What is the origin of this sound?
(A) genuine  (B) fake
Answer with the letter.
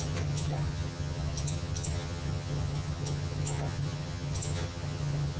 B